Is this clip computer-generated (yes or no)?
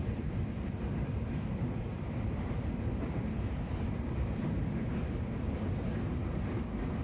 yes